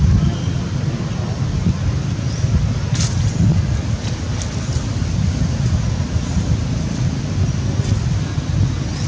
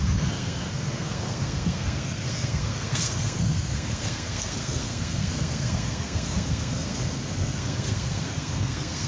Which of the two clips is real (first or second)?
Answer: first